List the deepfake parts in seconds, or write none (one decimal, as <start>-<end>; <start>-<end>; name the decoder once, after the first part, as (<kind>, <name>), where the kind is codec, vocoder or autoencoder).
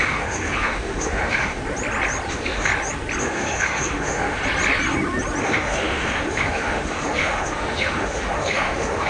0.0-1.6 (autoencoder, DAC-VAE); 2.3-2.7; 3.2-4.4; 5.4-9.1